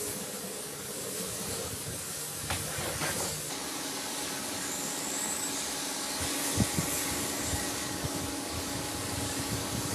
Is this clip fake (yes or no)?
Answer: yes